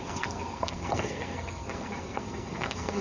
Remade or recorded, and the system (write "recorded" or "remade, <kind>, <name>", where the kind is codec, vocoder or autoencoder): remade, codec, SNAC